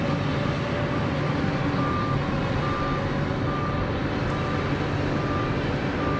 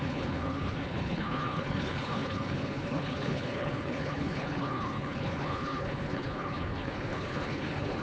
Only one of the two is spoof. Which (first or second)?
second